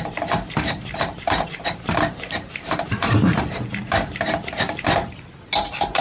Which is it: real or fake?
fake